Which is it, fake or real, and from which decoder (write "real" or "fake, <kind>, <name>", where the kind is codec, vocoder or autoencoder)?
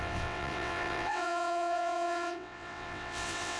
fake, vocoder, WaveNeXt